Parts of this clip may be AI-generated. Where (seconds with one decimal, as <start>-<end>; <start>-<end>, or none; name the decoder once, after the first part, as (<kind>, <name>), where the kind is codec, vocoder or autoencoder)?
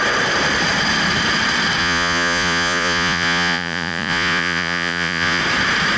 1.8-5.4 (vocoder, Vocos)